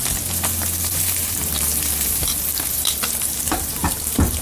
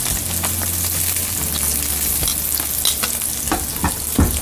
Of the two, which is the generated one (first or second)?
first